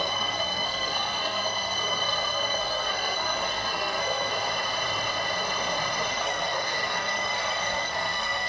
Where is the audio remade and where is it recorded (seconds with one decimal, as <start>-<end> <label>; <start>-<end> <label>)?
0.0-4.3 remade; 4.3-6.1 recorded; 6.1-8.5 remade